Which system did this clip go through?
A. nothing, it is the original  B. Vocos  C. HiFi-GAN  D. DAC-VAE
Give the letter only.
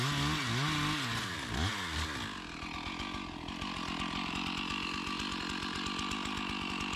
A